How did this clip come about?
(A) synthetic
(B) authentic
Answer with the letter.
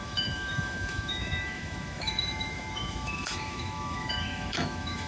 A